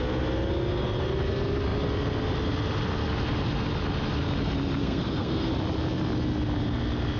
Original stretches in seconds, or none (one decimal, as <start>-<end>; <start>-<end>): 0.0-4.8; 5.5-7.2